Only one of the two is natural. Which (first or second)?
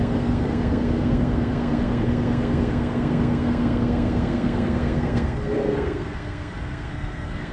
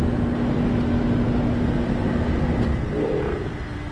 second